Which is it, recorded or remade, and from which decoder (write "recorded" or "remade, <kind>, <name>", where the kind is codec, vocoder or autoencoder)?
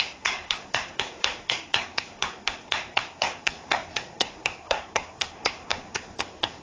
remade, codec, SNAC